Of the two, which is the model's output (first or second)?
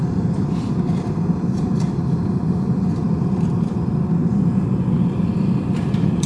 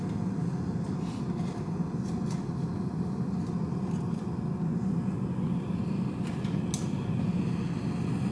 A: first